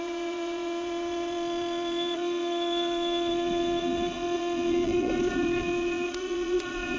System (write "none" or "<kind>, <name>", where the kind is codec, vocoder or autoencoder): vocoder, Vocos